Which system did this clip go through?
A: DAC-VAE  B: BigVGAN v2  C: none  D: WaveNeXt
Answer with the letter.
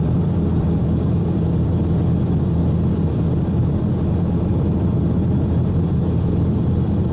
B